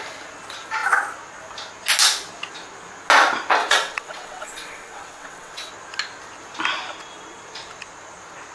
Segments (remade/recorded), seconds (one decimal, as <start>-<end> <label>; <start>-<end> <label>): 0.0-3.6 recorded; 3.6-5.7 remade; 5.7-8.5 recorded